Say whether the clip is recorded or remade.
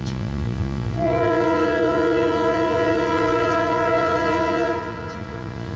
remade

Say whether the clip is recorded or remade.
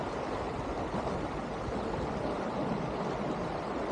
recorded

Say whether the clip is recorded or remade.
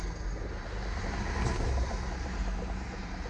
recorded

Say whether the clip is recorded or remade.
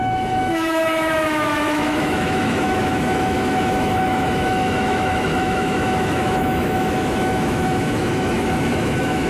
remade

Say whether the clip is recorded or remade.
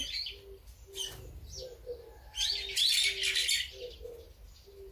recorded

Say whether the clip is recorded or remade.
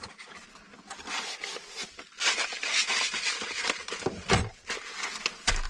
recorded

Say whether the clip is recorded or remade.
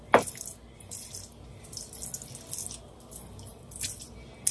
recorded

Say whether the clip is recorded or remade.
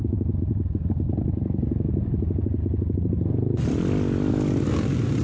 recorded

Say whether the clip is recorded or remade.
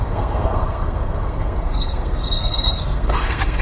remade